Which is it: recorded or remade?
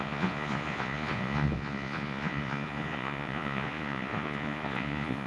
remade